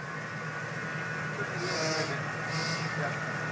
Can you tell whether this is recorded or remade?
recorded